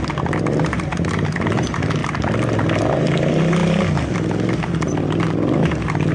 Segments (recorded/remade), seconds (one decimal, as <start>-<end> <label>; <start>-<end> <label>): 0.0-6.1 recorded